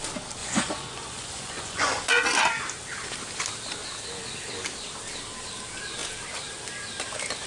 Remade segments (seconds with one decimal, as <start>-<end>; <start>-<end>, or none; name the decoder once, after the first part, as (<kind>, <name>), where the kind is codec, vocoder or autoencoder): 0.4-2.1 (vocoder, Vocos)